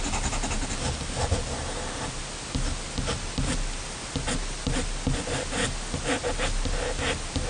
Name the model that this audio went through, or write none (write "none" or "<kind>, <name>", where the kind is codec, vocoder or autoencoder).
none